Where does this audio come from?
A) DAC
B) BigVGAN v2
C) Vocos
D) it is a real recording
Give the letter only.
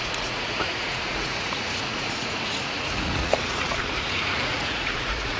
C